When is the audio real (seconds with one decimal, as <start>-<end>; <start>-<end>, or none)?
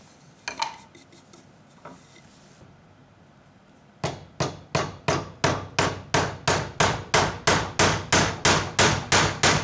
0.0-9.6